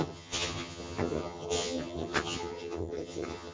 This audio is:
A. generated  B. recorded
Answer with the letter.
A